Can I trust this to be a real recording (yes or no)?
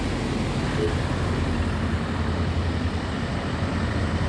yes